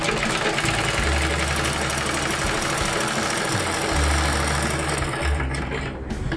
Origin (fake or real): real